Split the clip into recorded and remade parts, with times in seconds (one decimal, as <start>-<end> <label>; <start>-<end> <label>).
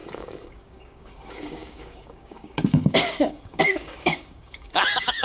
0.0-5.2 remade